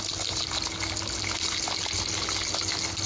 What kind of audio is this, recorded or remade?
recorded